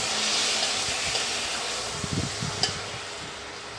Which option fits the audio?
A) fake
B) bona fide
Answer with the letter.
B